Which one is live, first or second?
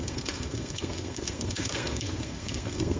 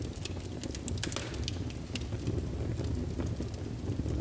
second